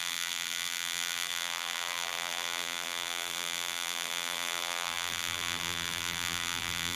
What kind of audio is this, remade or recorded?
remade